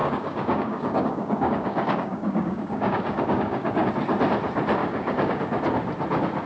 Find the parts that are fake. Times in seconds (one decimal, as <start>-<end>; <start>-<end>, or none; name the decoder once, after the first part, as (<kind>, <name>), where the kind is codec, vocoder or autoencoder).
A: 0.0-3.9 (codec, DAC); 4.8-5.4